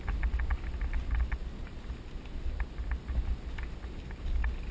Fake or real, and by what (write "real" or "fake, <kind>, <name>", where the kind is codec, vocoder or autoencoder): real